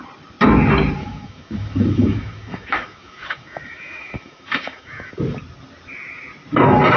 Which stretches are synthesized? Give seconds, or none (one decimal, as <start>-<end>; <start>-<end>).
1.0-5.1